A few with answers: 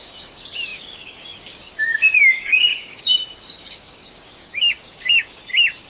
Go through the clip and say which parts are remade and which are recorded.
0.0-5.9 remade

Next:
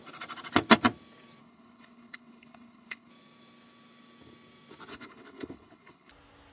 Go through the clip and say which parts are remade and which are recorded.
0.0-1.4 recorded; 1.4-3.1 remade; 3.1-4.9 recorded; 4.9-6.1 remade; 6.1-6.5 recorded

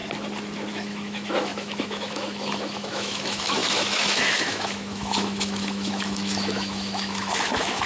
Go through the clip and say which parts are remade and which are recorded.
0.0-0.7 recorded; 0.7-7.9 remade

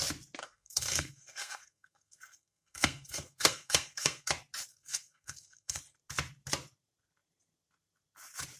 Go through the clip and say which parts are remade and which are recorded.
0.0-0.4 recorded; 0.4-4.3 remade; 4.3-4.7 recorded; 4.7-5.8 remade; 5.8-8.6 recorded

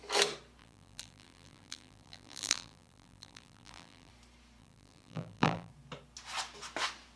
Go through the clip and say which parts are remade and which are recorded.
0.0-0.6 recorded; 0.6-4.1 remade; 4.1-4.6 recorded; 4.6-5.7 remade; 5.7-7.2 recorded

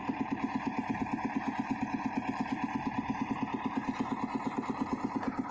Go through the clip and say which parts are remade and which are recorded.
0.0-5.5 recorded

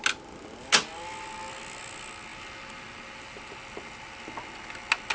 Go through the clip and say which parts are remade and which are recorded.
0.0-5.1 recorded

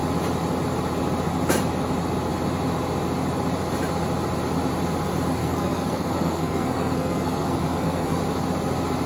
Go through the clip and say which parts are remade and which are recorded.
0.0-5.4 recorded; 5.4-8.2 remade; 8.2-9.1 recorded